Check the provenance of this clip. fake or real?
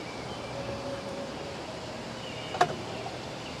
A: real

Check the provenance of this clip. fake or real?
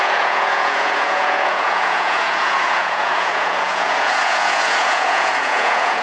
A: fake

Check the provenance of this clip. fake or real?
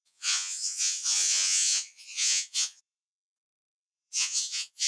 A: fake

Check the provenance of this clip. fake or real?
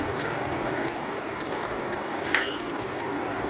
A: fake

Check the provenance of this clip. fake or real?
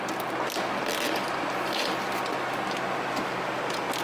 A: real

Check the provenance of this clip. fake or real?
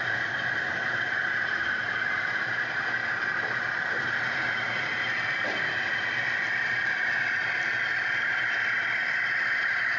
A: real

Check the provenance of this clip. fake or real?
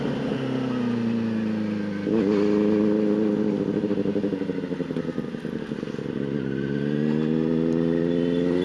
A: real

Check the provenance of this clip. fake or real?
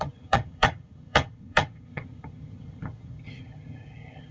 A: fake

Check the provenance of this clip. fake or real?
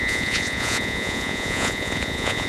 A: fake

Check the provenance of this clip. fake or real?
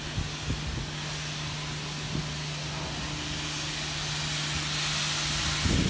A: real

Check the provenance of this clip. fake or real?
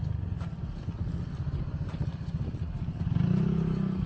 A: real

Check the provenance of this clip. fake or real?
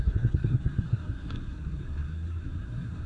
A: fake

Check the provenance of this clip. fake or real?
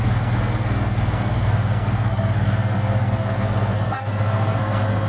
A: fake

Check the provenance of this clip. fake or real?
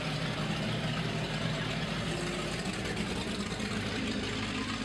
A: real